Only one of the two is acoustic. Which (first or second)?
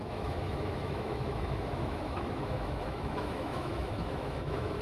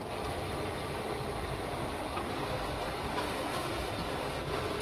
second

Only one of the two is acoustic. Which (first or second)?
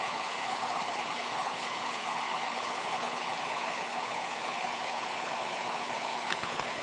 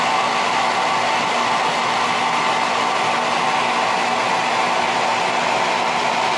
second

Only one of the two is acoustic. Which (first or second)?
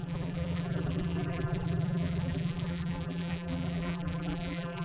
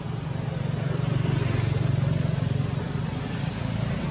second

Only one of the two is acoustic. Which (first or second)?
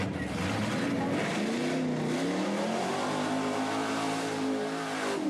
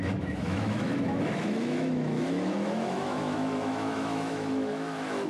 first